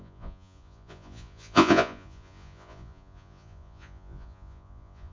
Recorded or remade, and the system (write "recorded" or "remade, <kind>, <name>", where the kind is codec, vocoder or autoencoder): remade, vocoder, Vocos